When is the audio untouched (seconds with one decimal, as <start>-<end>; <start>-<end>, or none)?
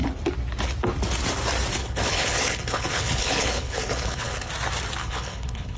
0.0-1.8; 4.5-5.0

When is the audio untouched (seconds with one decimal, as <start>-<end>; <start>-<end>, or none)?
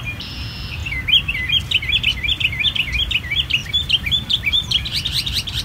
0.0-2.1; 2.9-3.6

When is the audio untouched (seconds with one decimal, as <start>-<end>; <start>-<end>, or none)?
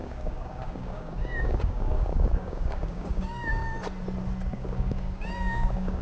3.6-4.5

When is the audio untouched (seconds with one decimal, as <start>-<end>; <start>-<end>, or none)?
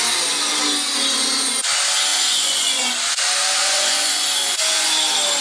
0.0-2.1; 2.9-3.6; 4.9-5.4